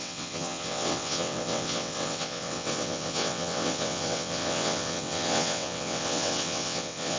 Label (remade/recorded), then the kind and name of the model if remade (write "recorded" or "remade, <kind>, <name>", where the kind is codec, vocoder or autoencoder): remade, vocoder, WaveNeXt